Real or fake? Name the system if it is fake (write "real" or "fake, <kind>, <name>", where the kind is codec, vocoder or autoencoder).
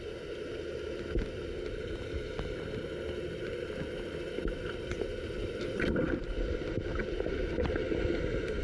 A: real